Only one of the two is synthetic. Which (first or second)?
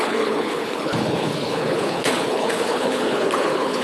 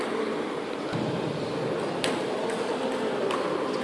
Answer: first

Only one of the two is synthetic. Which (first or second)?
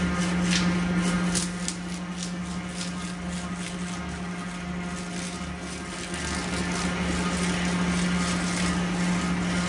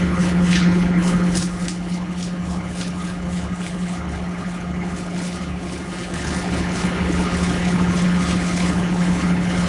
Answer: second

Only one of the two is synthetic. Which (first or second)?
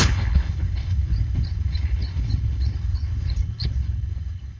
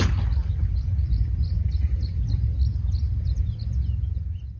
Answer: first